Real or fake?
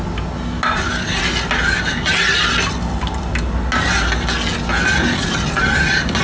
real